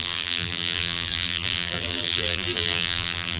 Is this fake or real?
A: fake